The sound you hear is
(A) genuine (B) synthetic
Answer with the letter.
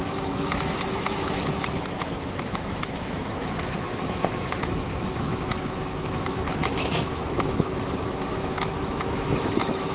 B